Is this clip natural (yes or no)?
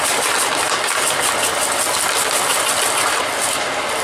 yes